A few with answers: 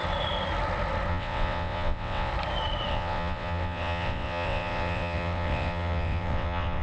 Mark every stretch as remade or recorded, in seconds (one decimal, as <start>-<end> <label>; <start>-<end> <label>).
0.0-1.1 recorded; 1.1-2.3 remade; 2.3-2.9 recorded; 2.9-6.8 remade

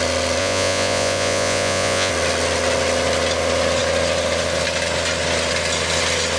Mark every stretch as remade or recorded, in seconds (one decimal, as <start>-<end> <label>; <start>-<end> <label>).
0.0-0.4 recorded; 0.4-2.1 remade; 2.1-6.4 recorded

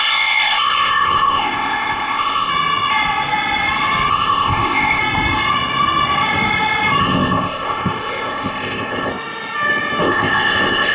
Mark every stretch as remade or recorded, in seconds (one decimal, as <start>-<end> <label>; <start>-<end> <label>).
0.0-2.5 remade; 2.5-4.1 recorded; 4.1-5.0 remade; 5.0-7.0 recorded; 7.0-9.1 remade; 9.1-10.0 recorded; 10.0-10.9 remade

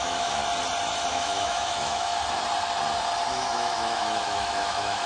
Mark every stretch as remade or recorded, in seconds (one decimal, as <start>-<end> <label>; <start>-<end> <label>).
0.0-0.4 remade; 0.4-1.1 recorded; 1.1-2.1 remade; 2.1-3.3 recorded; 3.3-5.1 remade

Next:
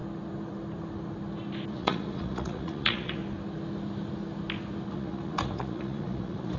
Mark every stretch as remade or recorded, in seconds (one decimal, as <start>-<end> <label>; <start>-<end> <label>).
0.0-1.7 recorded; 1.7-3.2 remade; 3.2-4.9 recorded; 4.9-6.6 remade

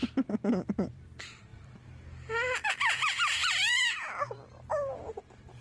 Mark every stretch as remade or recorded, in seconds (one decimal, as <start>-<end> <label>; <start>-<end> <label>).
0.0-1.5 remade; 1.5-2.7 recorded; 2.7-3.8 remade; 3.8-4.7 recorded; 4.7-5.6 remade

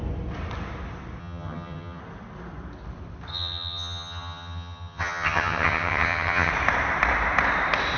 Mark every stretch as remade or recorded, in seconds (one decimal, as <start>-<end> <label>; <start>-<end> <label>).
0.0-1.2 recorded; 1.2-2.0 remade; 2.0-3.3 recorded; 3.3-6.5 remade; 6.5-8.0 recorded